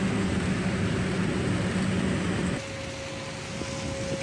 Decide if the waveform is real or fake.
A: real